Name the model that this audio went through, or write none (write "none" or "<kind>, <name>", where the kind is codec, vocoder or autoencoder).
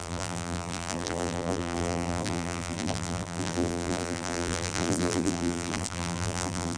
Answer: vocoder, BigVGAN v2